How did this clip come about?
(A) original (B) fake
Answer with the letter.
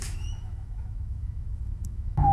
B